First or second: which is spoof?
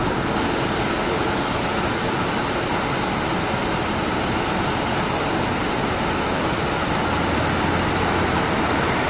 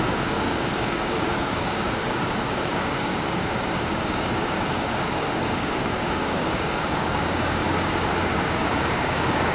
second